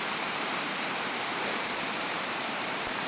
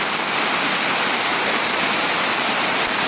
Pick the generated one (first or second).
first